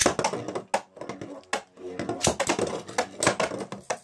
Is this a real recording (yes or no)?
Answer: yes